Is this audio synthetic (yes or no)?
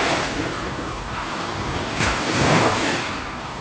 yes